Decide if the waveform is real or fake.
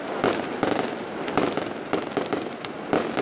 real